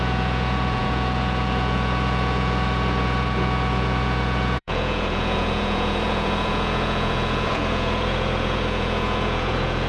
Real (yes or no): no